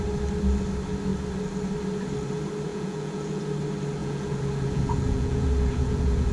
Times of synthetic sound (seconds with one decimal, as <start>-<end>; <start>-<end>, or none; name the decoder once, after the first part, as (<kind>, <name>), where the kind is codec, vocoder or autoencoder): 2.7-3.4 (vocoder, Vocos); 4.0-6.3